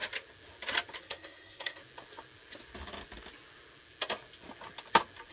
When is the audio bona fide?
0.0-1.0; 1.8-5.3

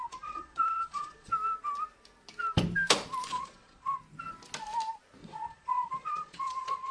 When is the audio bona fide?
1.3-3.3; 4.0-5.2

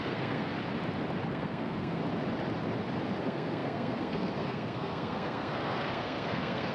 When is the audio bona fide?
0.5-1.3; 2.0-3.2

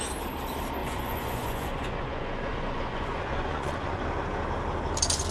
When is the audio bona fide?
0.0-0.8; 4.0-5.3

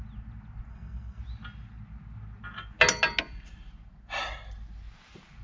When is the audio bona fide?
0.0-0.7; 1.2-5.4

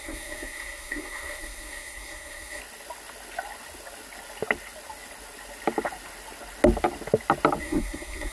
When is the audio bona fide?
2.6-7.6

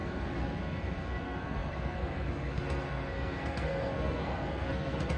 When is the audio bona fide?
none